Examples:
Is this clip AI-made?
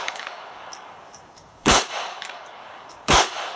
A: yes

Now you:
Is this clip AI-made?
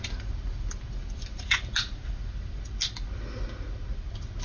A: no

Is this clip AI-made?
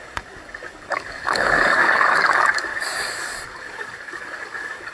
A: yes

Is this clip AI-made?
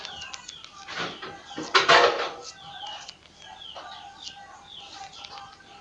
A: no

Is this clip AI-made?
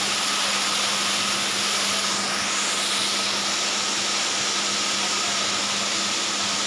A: no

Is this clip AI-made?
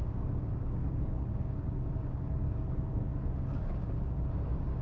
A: yes